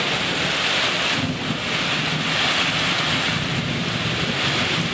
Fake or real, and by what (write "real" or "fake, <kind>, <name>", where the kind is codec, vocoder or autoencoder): real